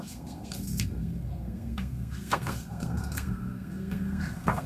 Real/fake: fake